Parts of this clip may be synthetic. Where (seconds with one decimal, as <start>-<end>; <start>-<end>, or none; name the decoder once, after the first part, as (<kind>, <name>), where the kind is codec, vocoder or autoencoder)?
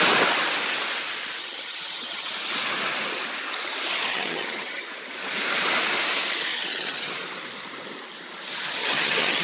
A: 1.4-2.3 (vocoder, HiFi-GAN); 4.1-4.9; 6.5-7.1; 8.8-9.4